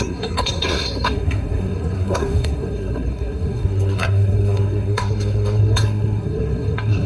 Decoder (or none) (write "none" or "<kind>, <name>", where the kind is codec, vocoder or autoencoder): codec, SNAC